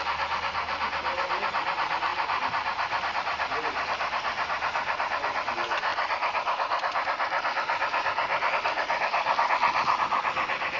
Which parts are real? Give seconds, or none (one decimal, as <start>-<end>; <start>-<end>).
0.0-10.8